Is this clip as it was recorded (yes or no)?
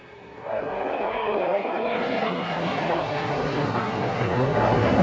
no